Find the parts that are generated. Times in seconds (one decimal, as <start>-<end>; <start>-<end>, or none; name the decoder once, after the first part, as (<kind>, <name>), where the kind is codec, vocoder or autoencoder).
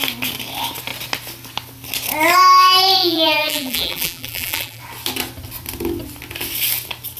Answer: 3.0-4.8 (vocoder, BigVGAN v2)